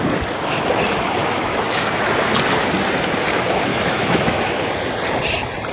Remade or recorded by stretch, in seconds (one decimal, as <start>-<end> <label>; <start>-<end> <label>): 0.0-1.2 recorded; 1.2-2.0 remade; 2.0-3.7 recorded; 3.7-4.5 remade; 4.5-5.7 recorded